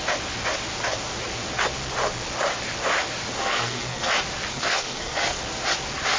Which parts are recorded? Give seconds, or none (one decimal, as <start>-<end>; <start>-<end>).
0.0-3.4; 4.1-4.5; 5.4-6.2